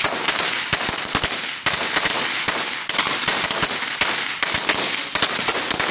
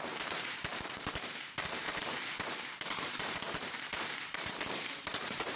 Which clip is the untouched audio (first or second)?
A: first